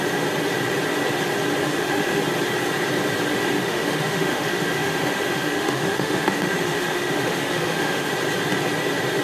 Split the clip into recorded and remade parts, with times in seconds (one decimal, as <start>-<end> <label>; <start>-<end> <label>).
0.0-1.6 recorded; 1.6-2.2 remade; 2.2-3.3 recorded; 3.3-8.1 remade; 8.1-9.2 recorded